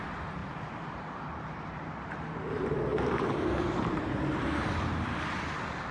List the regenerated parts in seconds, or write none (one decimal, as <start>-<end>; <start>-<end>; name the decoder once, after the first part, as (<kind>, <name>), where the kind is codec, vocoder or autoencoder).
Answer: 0.4-1.9 (vocoder, BigVGAN v2); 2.9-4.5